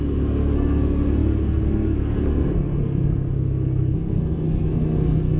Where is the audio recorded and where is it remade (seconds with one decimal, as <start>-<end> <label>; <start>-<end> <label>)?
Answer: 0.0-5.4 remade